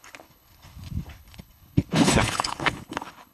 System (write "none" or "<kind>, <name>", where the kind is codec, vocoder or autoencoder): codec, HILCodec